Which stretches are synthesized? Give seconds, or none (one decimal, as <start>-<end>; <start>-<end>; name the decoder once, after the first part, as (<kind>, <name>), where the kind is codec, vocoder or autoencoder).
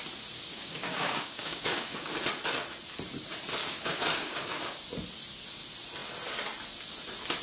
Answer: 0.5-2.1 (codec, DAC); 3.6-4.6